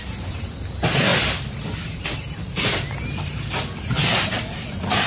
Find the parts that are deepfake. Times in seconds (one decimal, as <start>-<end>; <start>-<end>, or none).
none